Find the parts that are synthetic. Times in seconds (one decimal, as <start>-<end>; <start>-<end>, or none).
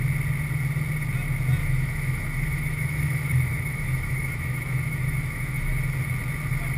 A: 1.6-5.7